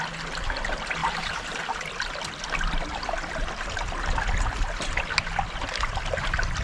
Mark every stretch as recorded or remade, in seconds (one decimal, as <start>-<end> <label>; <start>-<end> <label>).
0.0-1.0 recorded; 1.0-1.6 remade; 1.6-6.6 recorded